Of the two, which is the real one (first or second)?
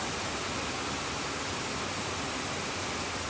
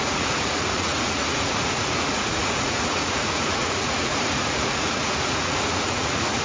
first